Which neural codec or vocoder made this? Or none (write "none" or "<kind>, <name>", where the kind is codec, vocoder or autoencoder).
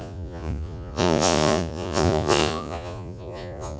vocoder, Vocos